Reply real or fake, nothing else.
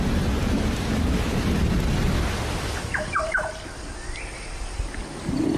real